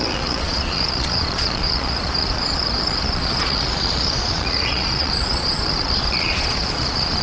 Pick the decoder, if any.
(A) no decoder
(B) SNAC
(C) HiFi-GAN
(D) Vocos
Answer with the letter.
D